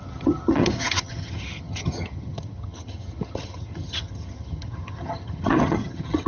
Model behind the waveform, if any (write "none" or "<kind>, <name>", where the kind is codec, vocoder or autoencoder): vocoder, HiFi-GAN